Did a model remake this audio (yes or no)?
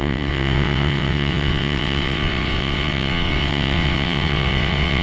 yes